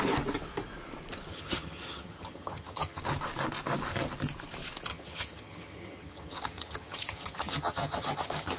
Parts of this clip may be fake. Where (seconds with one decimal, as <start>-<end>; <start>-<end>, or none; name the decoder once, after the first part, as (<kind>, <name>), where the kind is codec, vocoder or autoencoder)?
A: 1.3-3.0 (vocoder, HiFi-GAN); 4.9-8.6